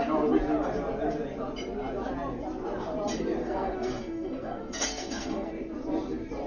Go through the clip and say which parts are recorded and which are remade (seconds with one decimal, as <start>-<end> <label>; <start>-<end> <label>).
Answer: 0.0-3.4 recorded; 3.4-5.5 remade; 5.5-6.5 recorded